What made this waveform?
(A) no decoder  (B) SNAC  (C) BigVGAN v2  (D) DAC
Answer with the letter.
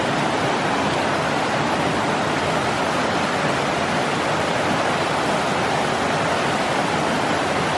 A